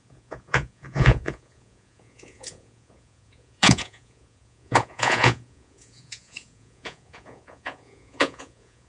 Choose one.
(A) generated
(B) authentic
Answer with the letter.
A